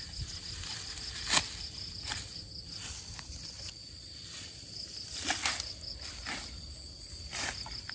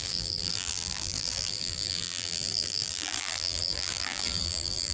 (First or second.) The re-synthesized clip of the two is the second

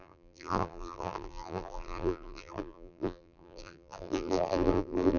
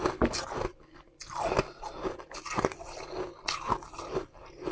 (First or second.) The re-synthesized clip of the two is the first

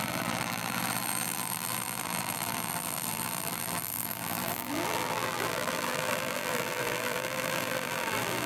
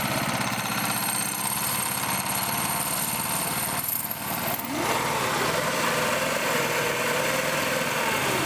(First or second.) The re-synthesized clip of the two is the first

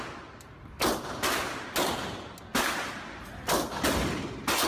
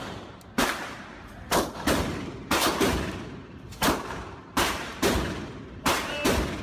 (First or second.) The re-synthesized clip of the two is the second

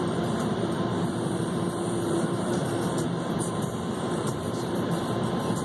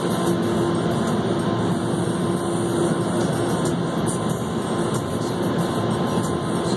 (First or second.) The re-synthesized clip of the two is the first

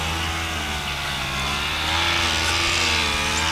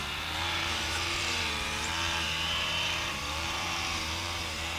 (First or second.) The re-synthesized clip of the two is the second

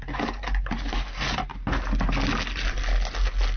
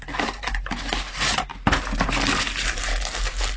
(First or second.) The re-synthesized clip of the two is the second